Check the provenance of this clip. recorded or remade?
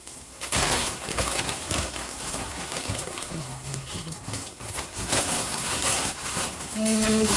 remade